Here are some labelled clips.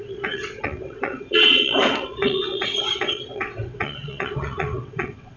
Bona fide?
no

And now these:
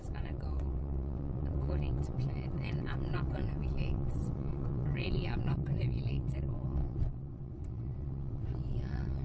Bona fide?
no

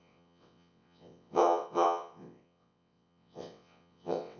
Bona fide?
no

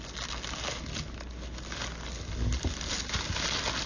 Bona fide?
yes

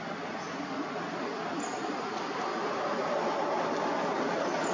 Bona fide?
yes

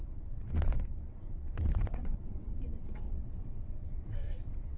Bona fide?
no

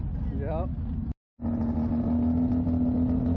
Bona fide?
yes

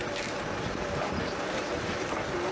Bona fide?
yes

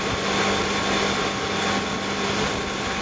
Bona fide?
yes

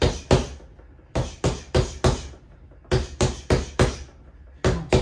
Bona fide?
yes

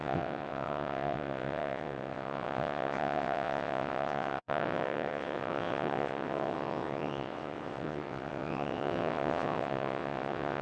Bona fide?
no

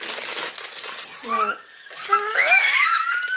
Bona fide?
yes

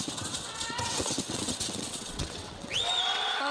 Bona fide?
no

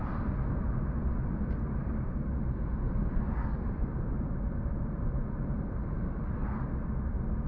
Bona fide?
yes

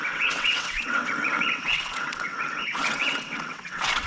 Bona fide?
no